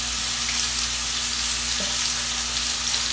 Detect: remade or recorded recorded